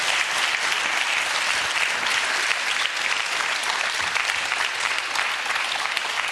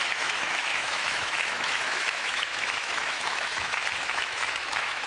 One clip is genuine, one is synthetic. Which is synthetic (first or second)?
second